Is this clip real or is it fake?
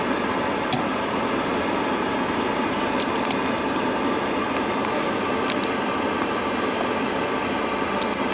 real